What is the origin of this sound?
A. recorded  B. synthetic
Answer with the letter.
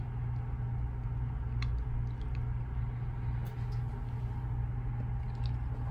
A